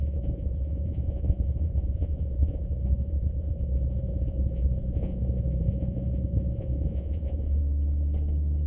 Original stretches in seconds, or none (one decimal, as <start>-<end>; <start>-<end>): 7.6-8.7